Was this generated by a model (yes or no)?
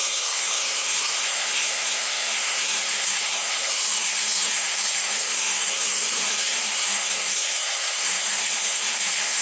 yes